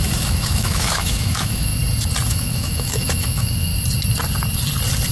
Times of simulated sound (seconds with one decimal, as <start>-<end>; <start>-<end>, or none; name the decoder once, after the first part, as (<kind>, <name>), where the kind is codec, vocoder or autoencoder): 0.0-1.7 (autoencoder, DAC-VAE); 2.3-3.7